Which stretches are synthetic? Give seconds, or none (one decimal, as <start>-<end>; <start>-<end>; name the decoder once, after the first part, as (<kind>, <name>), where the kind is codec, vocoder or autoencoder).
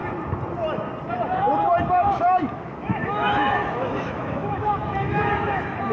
1.9-5.9 (autoencoder, DAC-VAE)